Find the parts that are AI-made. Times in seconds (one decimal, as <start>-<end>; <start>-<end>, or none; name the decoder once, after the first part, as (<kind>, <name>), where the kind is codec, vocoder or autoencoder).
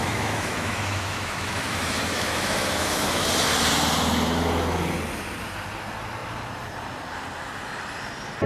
0.0-3.3 (autoencoder, DAC-VAE)